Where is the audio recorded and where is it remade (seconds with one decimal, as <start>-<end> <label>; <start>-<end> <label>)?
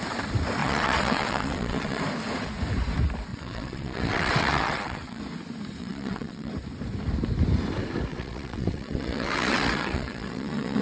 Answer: 0.0-0.6 recorded; 0.6-2.0 remade; 2.0-3.3 recorded; 3.3-5.2 remade; 5.2-5.8 recorded; 5.8-6.5 remade; 6.5-8.1 recorded; 8.1-10.8 remade